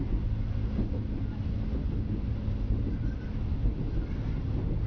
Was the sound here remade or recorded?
recorded